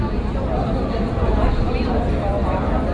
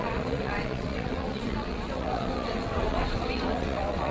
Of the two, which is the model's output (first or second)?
second